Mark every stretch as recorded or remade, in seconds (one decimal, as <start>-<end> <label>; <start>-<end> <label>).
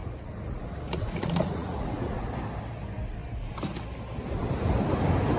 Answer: 0.0-2.3 remade; 2.3-5.4 recorded